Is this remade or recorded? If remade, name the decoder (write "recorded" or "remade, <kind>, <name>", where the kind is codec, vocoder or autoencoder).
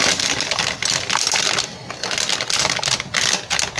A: recorded